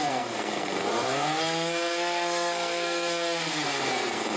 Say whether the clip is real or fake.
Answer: fake